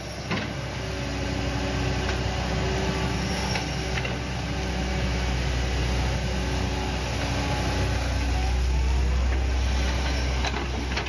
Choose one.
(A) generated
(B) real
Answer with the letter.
B